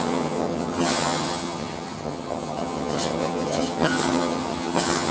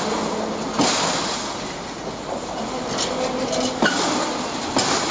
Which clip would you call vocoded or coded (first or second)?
first